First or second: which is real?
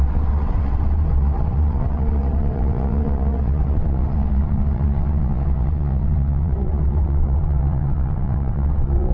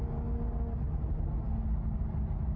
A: second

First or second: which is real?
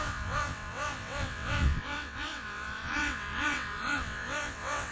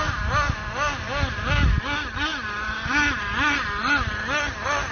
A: second